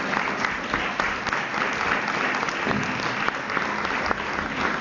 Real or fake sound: real